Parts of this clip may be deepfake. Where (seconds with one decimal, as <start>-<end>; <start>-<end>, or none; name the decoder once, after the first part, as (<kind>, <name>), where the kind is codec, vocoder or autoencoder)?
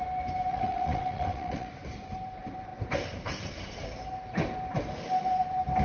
0.5-1.7 (vocoder, WaveNeXt)